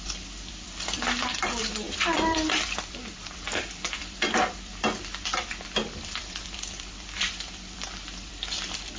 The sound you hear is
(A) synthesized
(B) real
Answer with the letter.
A